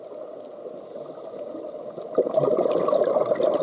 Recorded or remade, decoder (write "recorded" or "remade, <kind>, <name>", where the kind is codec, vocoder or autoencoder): recorded